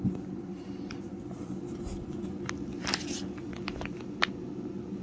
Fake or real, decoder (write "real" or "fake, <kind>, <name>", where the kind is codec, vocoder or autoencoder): real